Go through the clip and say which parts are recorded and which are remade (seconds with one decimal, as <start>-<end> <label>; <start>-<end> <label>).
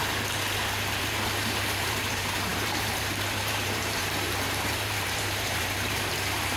0.0-1.0 recorded; 1.0-6.6 remade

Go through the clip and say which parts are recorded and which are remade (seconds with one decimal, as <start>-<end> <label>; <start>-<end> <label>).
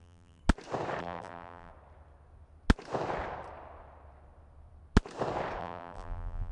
0.0-0.4 remade; 0.4-1.0 recorded; 1.0-1.7 remade; 1.7-5.6 recorded; 5.6-6.5 remade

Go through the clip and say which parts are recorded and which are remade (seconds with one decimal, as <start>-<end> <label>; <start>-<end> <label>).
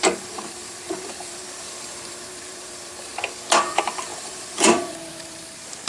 0.0-3.1 remade; 3.1-3.6 recorded; 3.6-5.9 remade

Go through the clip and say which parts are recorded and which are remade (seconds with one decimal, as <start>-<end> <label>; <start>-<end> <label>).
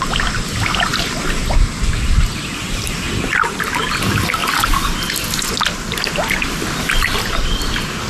0.0-4.4 recorded; 4.4-5.1 remade; 5.1-8.1 recorded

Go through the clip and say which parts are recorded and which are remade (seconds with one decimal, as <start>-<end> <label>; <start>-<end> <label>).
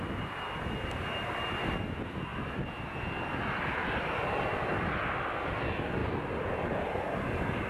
0.0-7.7 recorded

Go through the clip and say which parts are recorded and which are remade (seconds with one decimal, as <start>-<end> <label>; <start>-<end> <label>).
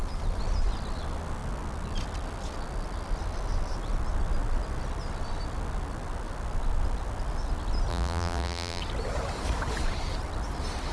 0.0-7.9 recorded; 7.9-8.8 remade; 8.8-10.9 recorded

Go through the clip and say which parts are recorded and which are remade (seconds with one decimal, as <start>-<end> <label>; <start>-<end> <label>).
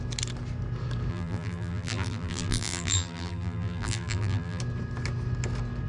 0.0-1.1 recorded; 1.1-4.6 remade; 4.6-5.9 recorded